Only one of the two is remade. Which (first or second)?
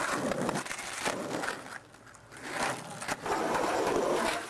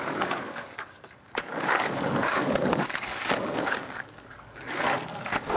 second